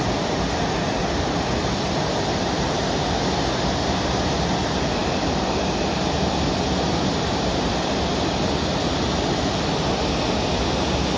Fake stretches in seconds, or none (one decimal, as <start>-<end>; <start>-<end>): none